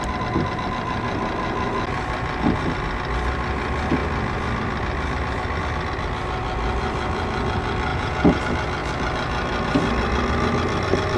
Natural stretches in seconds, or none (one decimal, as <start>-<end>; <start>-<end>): 0.0-7.9; 8.4-11.2